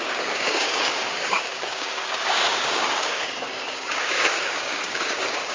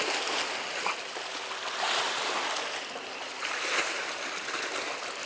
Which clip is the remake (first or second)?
first